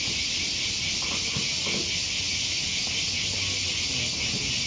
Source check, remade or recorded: recorded